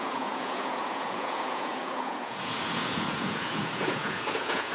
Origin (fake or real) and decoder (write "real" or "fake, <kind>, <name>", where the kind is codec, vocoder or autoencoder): fake, vocoder, Vocos